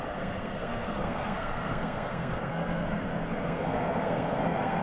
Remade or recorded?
remade